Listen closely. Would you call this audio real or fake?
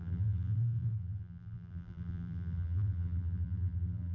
fake